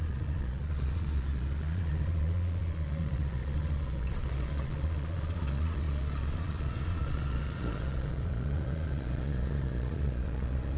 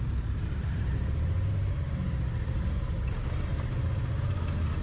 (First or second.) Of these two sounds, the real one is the second